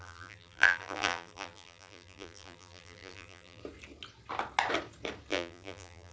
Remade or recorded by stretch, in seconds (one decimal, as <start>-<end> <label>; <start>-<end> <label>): 0.0-3.6 remade; 3.6-5.3 recorded; 5.3-6.1 remade